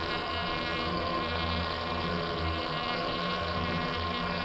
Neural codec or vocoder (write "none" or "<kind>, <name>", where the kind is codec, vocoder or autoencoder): codec, SNAC